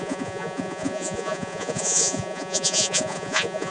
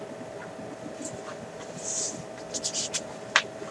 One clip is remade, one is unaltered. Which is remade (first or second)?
first